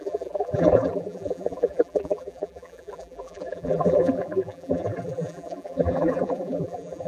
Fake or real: fake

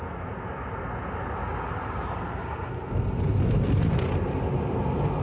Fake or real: real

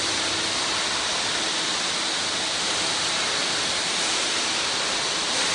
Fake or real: real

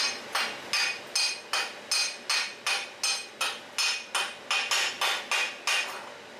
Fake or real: real